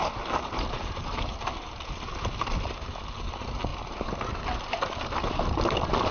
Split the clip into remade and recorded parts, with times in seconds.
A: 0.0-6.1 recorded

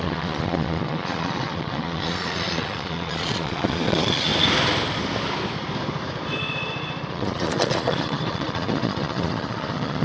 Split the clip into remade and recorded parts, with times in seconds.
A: 0.0-4.3 remade; 4.3-7.1 recorded; 7.1-10.0 remade

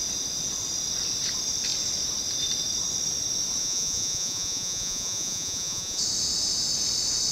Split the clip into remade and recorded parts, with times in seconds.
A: 0.0-3.6 recorded; 3.6-6.0 remade; 6.0-7.3 recorded

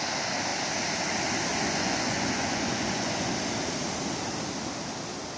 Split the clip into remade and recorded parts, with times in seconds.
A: 0.0-1.5 recorded; 1.5-3.3 remade; 3.3-5.4 recorded